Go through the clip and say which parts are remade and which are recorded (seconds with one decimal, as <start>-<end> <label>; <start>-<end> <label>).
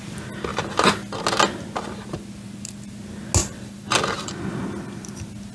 0.0-0.5 recorded; 0.5-1.1 remade; 1.1-3.4 recorded; 3.4-4.3 remade; 4.3-5.5 recorded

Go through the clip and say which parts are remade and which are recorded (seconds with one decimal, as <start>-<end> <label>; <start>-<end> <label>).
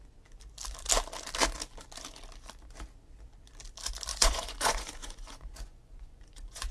0.0-4.1 recorded; 4.1-6.7 remade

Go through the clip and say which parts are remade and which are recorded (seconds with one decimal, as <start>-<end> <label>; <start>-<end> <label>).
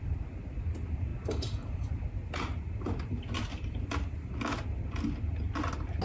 0.0-6.0 recorded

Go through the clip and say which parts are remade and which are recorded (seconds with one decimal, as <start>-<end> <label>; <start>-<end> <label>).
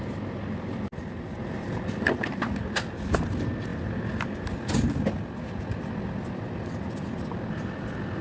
0.0-8.2 recorded